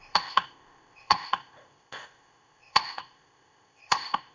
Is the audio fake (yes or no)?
yes